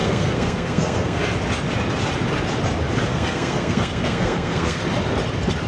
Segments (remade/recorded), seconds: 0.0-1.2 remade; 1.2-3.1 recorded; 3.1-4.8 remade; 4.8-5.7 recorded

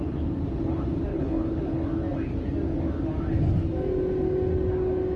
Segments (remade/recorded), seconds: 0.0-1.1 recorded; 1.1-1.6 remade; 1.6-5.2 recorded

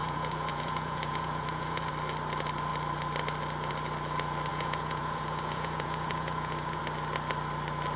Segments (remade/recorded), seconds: 0.0-1.9 remade; 1.9-4.5 recorded; 4.5-6.8 remade; 6.8-8.0 recorded

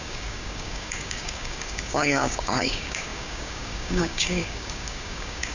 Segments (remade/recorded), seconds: 0.0-5.5 remade

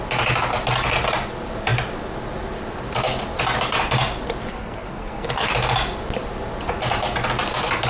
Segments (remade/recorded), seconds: 0.0-4.5 recorded; 4.5-5.5 remade; 5.5-7.9 recorded